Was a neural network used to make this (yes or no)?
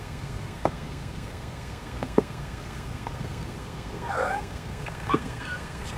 yes